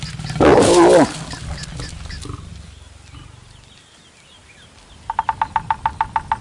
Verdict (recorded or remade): recorded